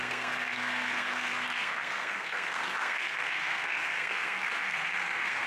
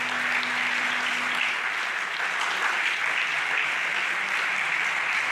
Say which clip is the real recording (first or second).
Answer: second